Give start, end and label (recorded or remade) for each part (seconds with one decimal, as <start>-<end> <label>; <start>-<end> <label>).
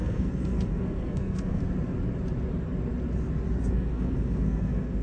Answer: 0.0-1.6 remade; 1.6-3.7 recorded; 3.7-5.0 remade